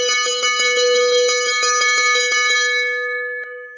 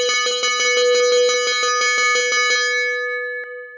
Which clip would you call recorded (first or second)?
second